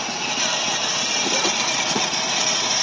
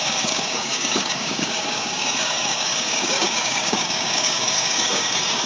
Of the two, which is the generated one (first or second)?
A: second